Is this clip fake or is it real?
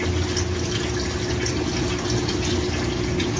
real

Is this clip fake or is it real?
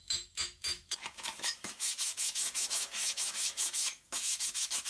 fake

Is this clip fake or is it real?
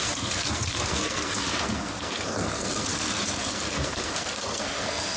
fake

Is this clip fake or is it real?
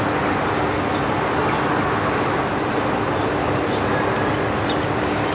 real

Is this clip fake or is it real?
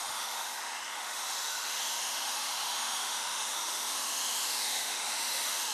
fake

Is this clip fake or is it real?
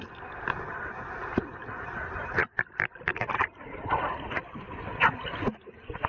real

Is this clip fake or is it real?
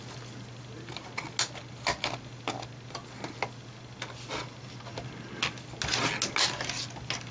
real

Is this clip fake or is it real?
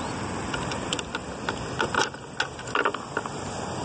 real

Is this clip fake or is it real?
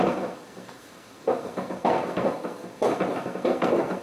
fake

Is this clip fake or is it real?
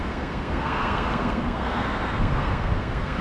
fake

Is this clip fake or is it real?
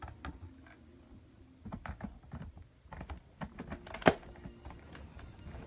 real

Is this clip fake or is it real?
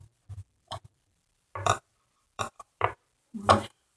fake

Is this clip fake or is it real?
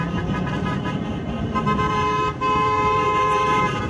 fake